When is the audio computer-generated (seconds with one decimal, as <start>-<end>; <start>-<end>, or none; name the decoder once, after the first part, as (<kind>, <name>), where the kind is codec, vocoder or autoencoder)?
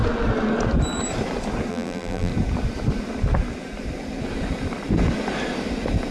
1.7-2.3 (vocoder, BigVGAN v2)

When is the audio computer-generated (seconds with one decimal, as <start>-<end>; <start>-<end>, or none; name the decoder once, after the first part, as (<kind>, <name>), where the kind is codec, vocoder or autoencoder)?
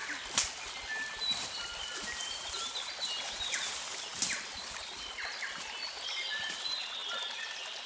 none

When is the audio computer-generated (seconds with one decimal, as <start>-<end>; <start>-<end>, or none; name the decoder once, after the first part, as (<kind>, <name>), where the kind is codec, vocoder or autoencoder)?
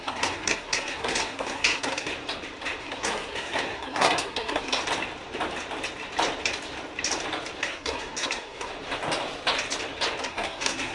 0.0-2.1 (codec, SNAC); 2.8-4.8; 7.6-8.7; 10.2-10.9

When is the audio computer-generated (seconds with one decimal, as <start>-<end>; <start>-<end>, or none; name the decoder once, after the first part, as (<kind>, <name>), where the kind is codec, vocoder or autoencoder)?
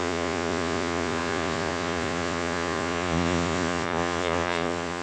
0.0-5.0 (vocoder, Vocos)